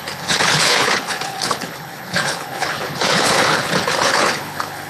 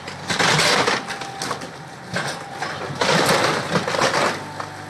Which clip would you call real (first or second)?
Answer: second